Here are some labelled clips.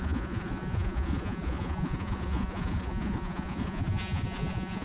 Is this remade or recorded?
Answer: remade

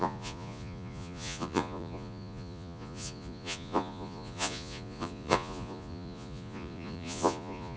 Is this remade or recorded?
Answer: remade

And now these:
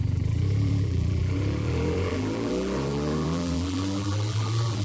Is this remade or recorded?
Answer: remade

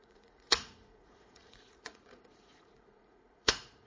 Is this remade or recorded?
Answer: remade